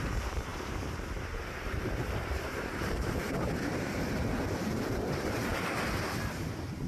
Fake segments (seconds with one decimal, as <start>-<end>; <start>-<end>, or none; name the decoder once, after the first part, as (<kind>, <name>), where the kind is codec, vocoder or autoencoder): 0.0-5.5 (vocoder, BigVGAN v2); 6.3-6.9